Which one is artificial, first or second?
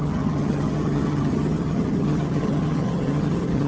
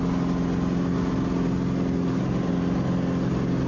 first